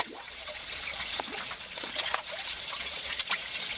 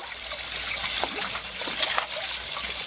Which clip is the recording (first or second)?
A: second